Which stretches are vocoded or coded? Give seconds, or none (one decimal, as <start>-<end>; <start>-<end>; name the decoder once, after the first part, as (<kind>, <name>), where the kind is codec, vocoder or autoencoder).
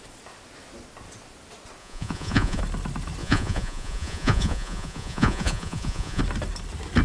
1.8-2.6 (vocoder, Vocos); 3.2-6.2